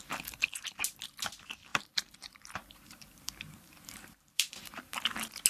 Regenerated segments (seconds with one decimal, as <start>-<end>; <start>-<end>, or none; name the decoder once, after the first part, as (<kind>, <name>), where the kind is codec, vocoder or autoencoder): 1.7-5.0 (vocoder, BigVGAN v2)